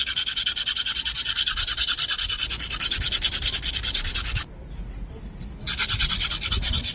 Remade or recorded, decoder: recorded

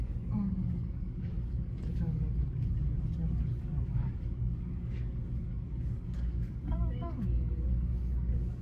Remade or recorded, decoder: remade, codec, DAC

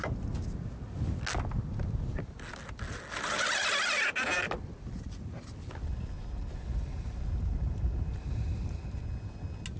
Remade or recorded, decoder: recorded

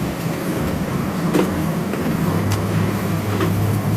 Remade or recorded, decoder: remade, codec, DAC